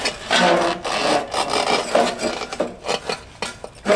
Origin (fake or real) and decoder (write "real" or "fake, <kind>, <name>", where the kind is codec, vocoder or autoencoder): real